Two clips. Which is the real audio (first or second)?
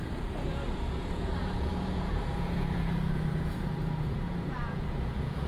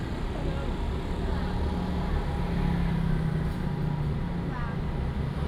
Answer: second